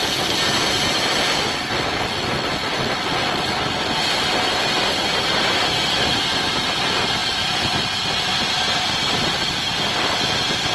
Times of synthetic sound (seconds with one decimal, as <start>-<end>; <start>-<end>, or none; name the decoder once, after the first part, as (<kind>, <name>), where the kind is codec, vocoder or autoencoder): 7.2-7.8 (vocoder, BigVGAN v2)